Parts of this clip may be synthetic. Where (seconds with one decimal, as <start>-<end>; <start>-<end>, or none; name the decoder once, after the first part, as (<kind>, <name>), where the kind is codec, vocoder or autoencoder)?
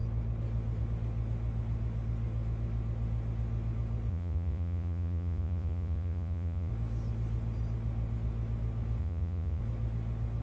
4.1-6.7 (vocoder, Vocos); 9.0-9.6